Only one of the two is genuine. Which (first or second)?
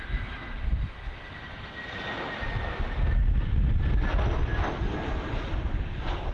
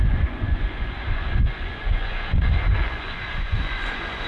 first